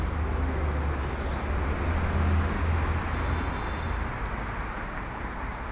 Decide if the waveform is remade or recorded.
recorded